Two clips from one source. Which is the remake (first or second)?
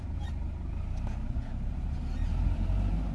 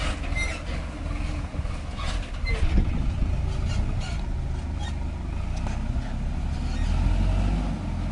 first